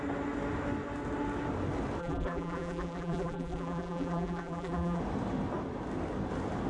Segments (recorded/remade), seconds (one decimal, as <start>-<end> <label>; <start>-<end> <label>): 0.0-2.0 recorded; 2.0-5.0 remade; 5.0-6.7 recorded